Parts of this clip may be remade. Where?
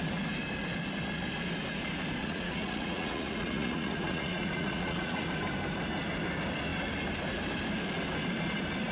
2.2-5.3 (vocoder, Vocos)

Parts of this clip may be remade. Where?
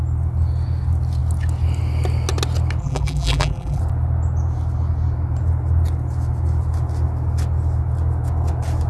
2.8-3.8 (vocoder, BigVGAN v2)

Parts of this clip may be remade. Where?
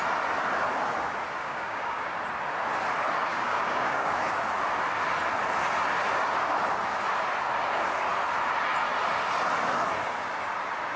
1.4-2.1 (codec, DAC); 3.3-4.2